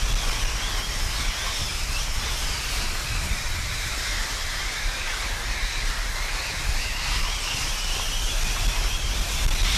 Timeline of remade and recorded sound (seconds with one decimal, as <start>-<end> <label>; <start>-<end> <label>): 0.0-9.8 recorded

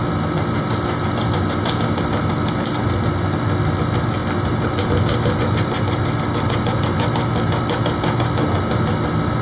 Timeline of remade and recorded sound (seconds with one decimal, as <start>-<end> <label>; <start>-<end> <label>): 0.0-9.4 recorded